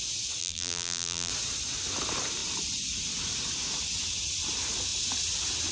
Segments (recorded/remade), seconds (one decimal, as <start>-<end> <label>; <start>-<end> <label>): 0.0-0.4 recorded; 0.4-1.3 remade; 1.3-5.7 recorded